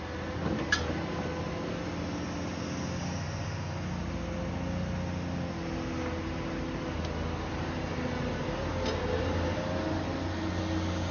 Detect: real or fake real